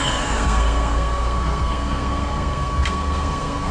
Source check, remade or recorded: remade